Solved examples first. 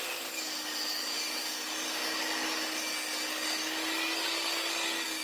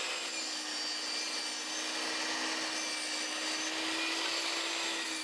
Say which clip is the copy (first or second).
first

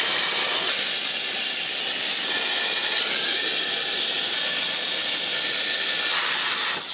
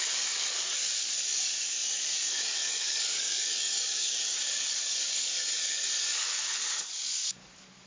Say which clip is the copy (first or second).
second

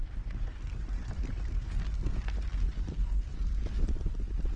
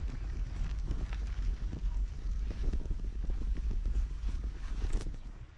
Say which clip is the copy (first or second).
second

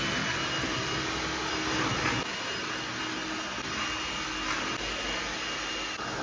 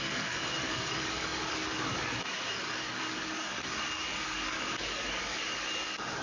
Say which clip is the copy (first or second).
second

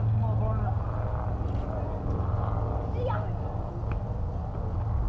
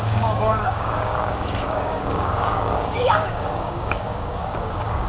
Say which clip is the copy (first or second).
second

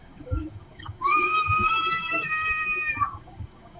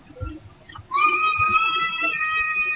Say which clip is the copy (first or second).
first